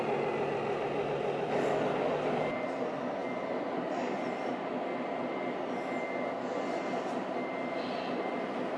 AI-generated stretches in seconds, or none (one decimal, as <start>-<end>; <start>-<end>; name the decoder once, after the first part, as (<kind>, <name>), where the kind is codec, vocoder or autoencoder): none